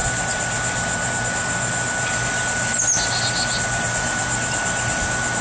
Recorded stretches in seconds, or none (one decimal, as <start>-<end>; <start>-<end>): 0.0-5.4